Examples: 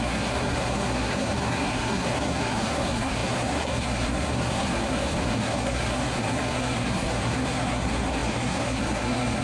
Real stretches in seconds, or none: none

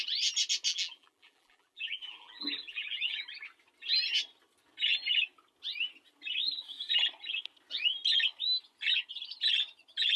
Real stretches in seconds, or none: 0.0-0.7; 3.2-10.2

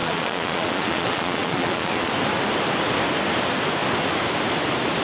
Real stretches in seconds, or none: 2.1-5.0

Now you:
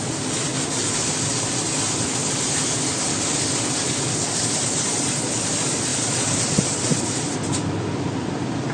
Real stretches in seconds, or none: 0.5-1.5; 2.2-4.4